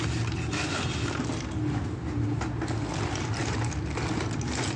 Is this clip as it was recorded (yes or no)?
yes